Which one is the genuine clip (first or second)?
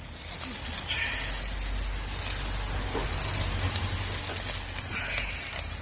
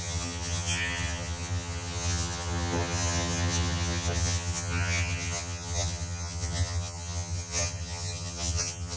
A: first